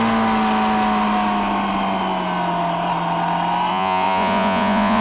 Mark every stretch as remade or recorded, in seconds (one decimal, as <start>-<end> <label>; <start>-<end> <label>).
0.0-3.7 recorded; 3.7-5.0 remade